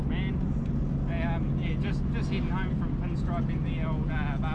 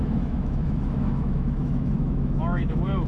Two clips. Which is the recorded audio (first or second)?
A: first